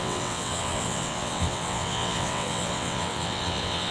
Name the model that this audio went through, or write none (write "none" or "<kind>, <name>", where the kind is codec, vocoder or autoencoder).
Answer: vocoder, WaveNeXt